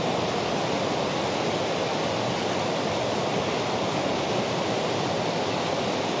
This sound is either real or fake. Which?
real